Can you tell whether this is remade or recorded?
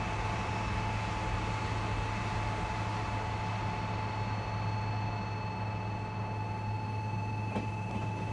recorded